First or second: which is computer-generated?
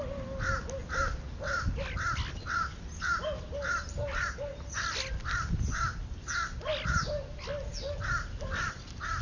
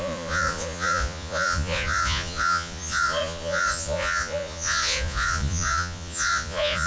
second